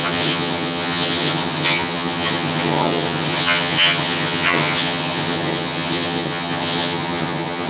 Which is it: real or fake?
fake